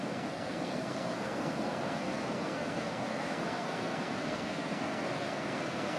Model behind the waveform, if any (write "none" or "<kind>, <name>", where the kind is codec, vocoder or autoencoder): codec, SNAC